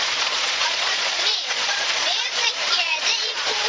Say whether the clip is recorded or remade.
remade